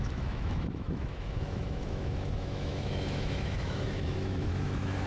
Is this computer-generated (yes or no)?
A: yes